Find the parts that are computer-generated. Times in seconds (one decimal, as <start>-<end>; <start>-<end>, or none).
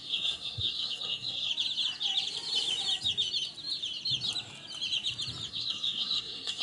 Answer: 0.0-1.5; 5.5-6.6